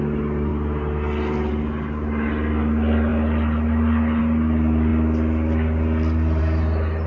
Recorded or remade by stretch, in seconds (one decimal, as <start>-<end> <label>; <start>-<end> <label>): 0.0-7.1 recorded